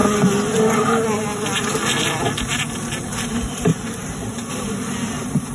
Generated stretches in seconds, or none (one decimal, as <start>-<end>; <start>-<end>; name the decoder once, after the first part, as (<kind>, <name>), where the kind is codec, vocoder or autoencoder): none